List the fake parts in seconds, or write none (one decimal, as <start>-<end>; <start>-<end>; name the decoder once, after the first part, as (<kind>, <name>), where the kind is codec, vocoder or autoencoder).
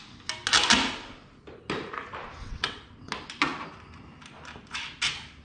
2.4-3.1 (vocoder, WaveNeXt)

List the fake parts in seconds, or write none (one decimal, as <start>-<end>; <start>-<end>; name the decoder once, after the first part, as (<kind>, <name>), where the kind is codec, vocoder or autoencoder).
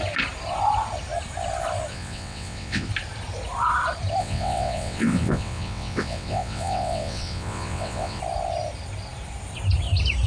1.9-2.9 (vocoder, WaveNeXt); 4.2-8.2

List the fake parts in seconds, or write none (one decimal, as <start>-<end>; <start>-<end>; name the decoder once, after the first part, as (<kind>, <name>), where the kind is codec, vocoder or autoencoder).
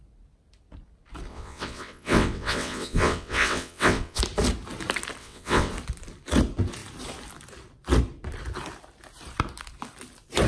1.3-4.2 (vocoder, WaveNeXt); 5.2-5.7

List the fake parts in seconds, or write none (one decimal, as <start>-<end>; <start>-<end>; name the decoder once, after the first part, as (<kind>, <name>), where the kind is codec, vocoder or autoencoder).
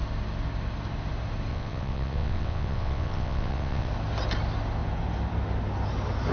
1.5-3.9 (vocoder, WaveNeXt)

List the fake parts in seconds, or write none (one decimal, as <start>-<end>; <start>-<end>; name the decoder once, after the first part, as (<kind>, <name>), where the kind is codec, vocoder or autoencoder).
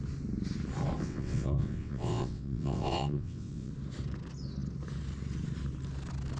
1.0-3.7 (vocoder, WaveNeXt)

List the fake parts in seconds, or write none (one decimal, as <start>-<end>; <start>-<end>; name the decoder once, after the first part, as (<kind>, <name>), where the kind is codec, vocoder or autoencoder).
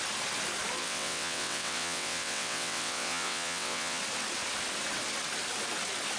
0.8-4.0 (vocoder, WaveNeXt)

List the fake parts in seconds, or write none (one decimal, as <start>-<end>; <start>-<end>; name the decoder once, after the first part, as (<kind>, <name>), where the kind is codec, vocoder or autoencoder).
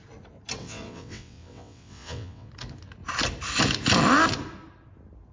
0.6-2.5 (vocoder, WaveNeXt)